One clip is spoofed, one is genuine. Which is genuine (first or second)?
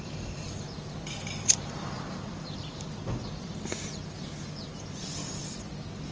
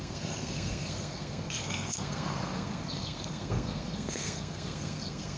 first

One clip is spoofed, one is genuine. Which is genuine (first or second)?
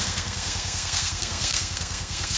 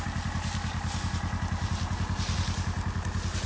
second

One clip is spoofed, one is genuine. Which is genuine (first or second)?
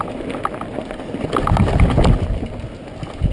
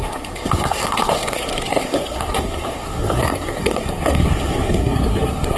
first